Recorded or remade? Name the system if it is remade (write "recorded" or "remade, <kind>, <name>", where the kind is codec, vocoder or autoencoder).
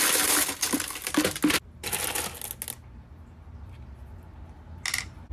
recorded